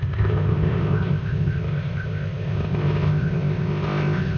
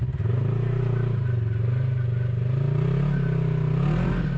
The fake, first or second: first